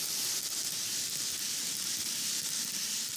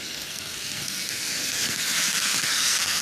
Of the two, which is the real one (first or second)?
first